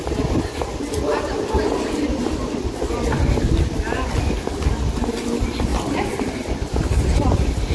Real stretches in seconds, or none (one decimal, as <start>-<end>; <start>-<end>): 0.0-5.7